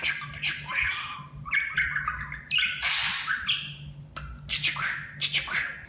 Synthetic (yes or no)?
no